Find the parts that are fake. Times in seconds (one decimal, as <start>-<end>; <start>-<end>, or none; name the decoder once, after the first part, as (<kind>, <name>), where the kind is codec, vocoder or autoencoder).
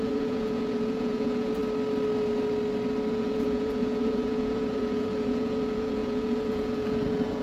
0.0-1.6 (vocoder, Vocos); 3.1-7.4